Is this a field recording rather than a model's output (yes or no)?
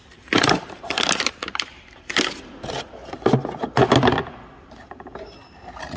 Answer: yes